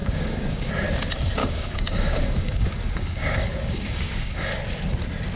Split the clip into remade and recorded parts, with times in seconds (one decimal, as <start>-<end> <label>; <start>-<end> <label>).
0.0-0.7 remade; 0.7-1.4 recorded; 1.4-4.6 remade; 4.6-5.4 recorded